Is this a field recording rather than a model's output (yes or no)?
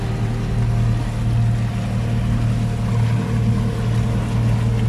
yes